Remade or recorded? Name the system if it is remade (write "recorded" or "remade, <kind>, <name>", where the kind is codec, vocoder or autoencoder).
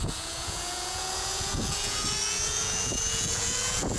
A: remade, vocoder, Vocos